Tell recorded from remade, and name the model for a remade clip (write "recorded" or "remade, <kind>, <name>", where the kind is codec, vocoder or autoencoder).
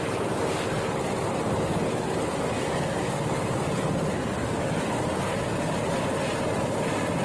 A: recorded